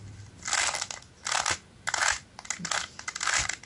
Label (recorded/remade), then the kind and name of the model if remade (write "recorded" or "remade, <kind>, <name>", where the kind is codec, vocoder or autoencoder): recorded